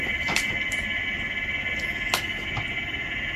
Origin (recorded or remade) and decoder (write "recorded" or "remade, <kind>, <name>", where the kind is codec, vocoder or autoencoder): recorded